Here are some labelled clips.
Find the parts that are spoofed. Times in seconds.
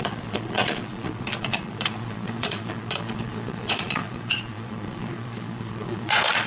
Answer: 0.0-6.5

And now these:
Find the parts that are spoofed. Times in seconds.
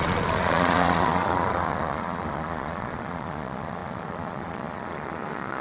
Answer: 0.0-5.6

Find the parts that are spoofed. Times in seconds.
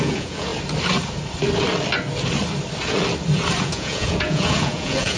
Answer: 0.0-0.5; 3.6-5.2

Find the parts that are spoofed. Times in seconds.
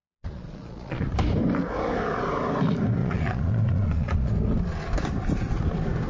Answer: 0.0-1.1; 3.0-4.3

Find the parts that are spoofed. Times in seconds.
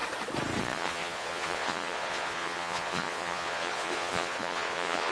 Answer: 0.6-5.1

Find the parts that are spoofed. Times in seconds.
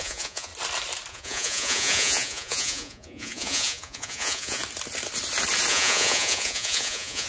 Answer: 0.0-0.5; 1.1-4.6; 5.7-7.3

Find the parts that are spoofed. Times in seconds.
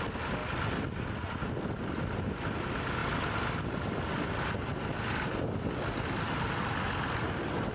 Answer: none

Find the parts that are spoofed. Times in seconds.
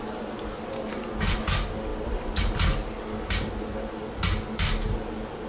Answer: none